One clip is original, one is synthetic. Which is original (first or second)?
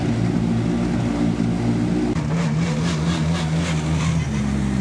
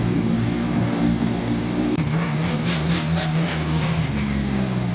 first